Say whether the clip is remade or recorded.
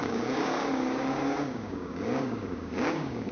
remade